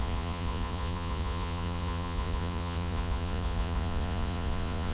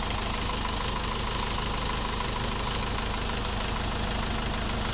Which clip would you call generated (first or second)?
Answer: first